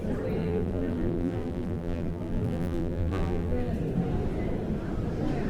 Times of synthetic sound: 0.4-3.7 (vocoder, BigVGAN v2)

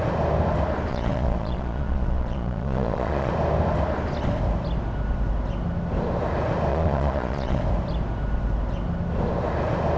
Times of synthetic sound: 0.9-3.3 (vocoder, Vocos); 6.7-7.6

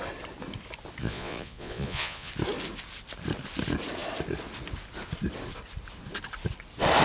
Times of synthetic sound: 1.0-2.3 (vocoder, Vocos)